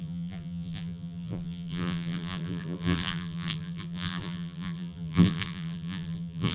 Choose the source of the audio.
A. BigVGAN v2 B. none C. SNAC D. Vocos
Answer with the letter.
A